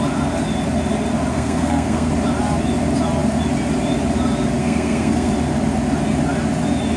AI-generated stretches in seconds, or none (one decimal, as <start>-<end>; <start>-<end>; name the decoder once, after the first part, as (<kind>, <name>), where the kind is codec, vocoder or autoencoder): 1.3-2.1 (codec, SNAC); 4.6-5.3